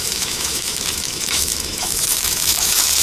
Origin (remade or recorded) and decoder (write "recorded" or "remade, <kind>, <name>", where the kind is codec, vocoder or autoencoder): remade, autoencoder, DAC-VAE